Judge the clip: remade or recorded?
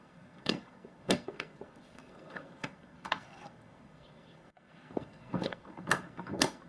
remade